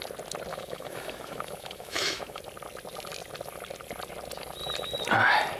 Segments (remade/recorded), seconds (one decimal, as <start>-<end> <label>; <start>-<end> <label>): 0.0-0.5 recorded; 0.5-2.4 remade; 2.4-5.6 recorded